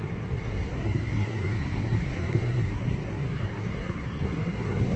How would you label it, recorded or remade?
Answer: remade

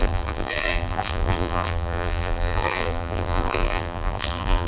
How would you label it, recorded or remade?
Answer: remade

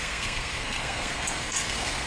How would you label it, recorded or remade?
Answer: remade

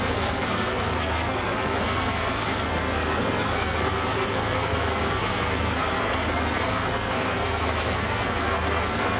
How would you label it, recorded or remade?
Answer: remade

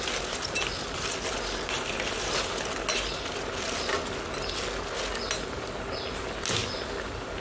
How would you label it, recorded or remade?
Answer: recorded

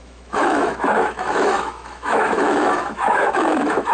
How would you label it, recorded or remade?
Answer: remade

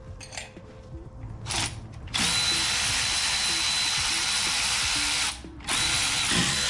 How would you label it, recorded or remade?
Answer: remade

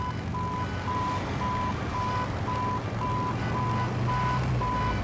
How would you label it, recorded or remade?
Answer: recorded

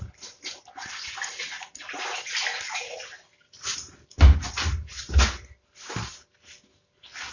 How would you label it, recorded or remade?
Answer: recorded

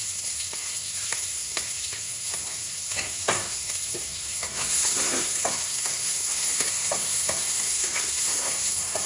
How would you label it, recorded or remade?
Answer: remade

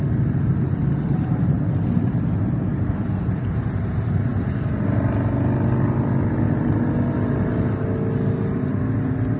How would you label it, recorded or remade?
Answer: recorded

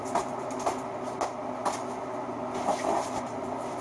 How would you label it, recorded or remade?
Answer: recorded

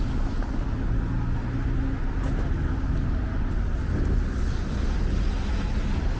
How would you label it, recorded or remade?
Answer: recorded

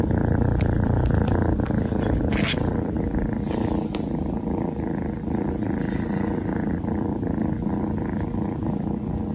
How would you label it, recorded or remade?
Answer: recorded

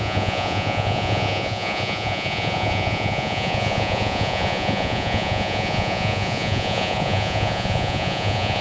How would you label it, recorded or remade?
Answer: remade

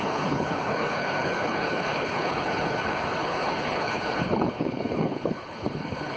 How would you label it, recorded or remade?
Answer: remade